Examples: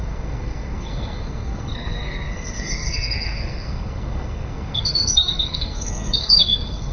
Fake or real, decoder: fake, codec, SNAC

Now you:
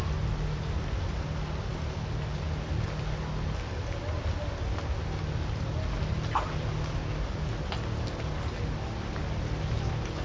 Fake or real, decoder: real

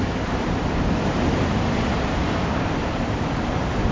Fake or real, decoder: real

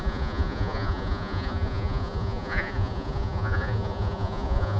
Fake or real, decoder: fake, vocoder, Vocos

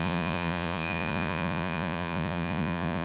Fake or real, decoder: fake, vocoder, Vocos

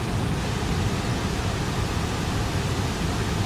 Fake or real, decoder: real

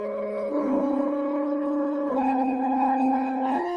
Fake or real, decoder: fake, codec, HILCodec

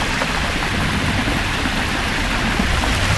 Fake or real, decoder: real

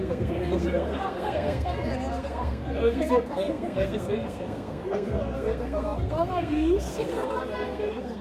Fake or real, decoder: fake, codec, SNAC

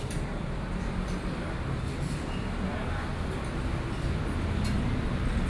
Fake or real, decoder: real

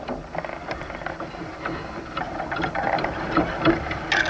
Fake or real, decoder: real